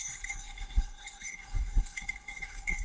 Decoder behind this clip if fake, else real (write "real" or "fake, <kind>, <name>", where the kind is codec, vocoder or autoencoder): fake, codec, SNAC